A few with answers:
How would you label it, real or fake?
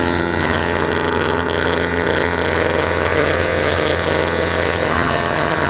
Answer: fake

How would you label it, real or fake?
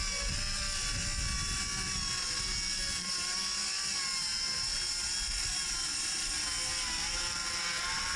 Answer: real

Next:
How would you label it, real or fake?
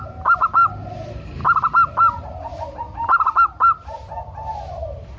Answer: fake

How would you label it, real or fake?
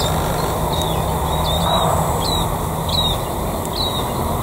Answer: real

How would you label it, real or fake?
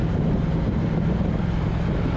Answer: real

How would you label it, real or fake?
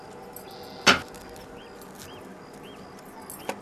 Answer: real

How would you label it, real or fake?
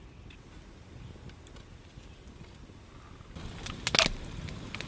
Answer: real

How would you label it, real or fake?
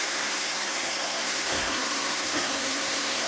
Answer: fake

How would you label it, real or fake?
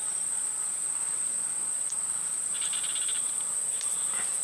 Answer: real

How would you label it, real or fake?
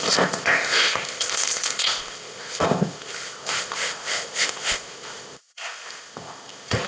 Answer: fake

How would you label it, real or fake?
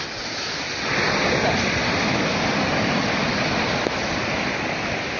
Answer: real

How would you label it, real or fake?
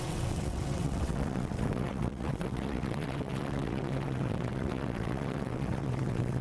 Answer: fake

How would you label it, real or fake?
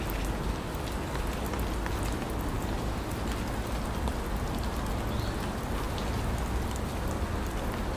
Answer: real